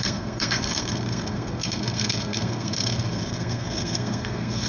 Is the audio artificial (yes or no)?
yes